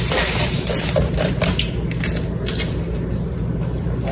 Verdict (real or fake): real